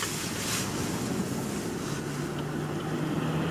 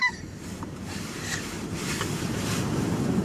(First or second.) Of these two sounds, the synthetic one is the second